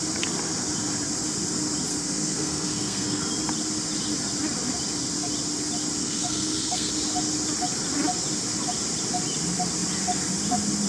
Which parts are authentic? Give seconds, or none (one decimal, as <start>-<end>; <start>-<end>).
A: 0.0-1.9; 3.2-6.0; 6.9-10.9